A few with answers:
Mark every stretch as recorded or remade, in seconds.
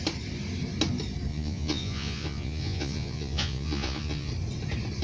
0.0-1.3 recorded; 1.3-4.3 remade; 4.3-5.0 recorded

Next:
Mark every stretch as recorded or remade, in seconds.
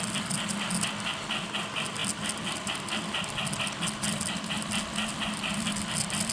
0.0-6.3 recorded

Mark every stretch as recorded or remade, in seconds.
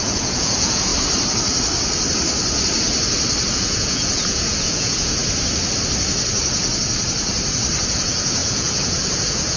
0.0-0.9 remade; 0.9-3.5 recorded; 3.5-5.2 remade; 5.2-7.8 recorded; 7.8-9.6 remade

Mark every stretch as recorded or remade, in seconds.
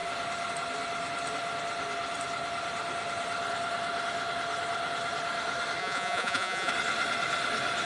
0.0-5.8 recorded; 5.8-6.7 remade; 6.7-7.9 recorded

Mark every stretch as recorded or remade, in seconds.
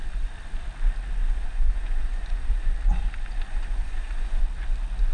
0.0-1.3 recorded; 1.3-2.7 remade; 2.7-3.5 recorded; 3.5-4.4 remade; 4.4-5.1 recorded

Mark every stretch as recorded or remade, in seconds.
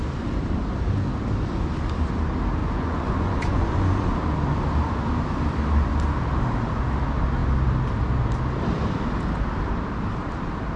0.0-2.6 recorded; 2.6-3.9 remade; 3.9-10.8 recorded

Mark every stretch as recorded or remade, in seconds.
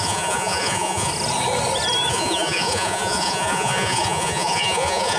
0.0-1.1 remade; 1.1-2.1 recorded; 2.1-5.2 remade